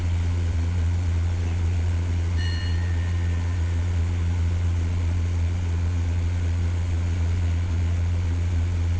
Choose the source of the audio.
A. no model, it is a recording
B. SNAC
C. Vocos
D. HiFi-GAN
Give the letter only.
C